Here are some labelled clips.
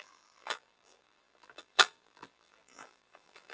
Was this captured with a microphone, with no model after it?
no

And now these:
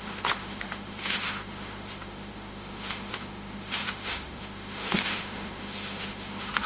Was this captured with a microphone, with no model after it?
no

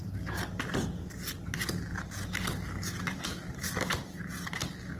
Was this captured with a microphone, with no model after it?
yes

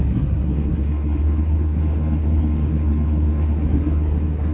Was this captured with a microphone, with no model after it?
no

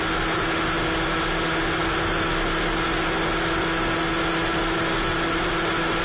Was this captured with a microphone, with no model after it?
yes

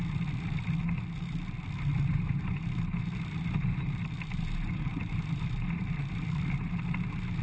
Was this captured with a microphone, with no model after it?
yes